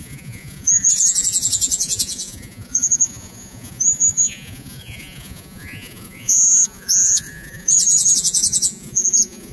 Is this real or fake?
fake